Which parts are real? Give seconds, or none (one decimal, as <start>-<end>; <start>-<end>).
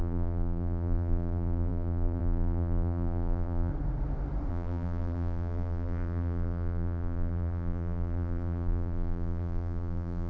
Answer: 3.7-4.5